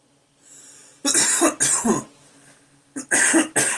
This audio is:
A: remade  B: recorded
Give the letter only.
B